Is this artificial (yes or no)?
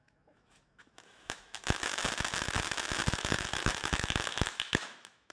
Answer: yes